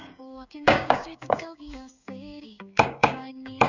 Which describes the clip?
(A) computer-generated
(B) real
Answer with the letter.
A